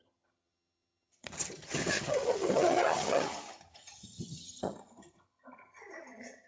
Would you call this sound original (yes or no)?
no